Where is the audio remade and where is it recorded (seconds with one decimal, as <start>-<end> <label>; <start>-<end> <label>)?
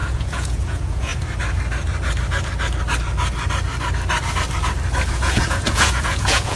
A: 0.0-1.1 remade; 1.1-5.1 recorded; 5.1-6.6 remade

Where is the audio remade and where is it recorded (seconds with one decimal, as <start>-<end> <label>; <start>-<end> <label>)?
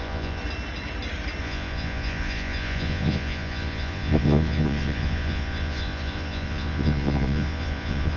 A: 0.0-0.4 remade; 0.4-1.4 recorded; 1.4-8.2 remade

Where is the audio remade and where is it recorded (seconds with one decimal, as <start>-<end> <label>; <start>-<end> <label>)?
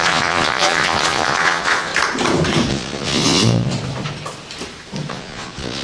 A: 0.0-1.9 remade; 1.9-2.7 recorded; 2.7-3.7 remade; 3.7-5.1 recorded; 5.1-5.8 remade